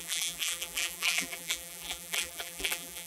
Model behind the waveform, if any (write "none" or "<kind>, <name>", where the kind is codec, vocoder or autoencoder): vocoder, BigVGAN v2